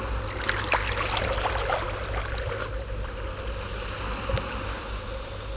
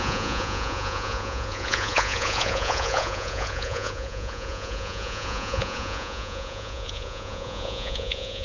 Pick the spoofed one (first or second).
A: second